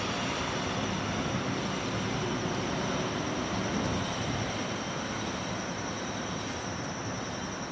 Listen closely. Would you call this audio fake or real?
real